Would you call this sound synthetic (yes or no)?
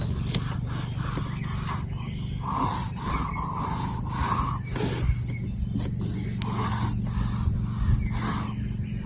no